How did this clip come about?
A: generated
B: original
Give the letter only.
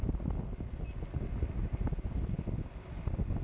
B